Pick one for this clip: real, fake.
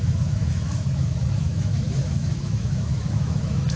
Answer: fake